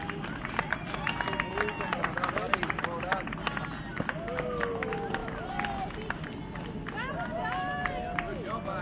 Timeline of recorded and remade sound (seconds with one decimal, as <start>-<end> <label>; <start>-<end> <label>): 0.0-8.8 recorded